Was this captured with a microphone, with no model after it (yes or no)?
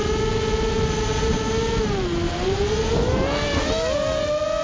yes